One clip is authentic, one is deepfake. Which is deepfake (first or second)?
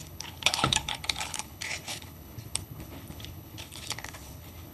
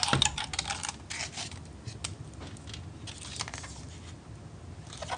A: first